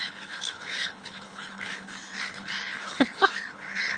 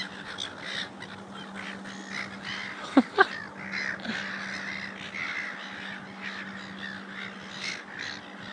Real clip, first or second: second